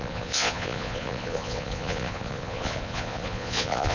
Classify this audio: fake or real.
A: fake